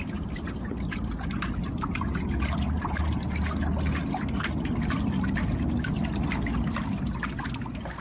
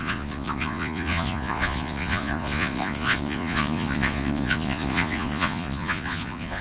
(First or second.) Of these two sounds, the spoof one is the second